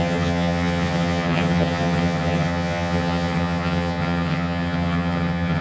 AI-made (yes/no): yes